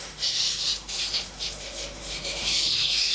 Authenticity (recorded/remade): remade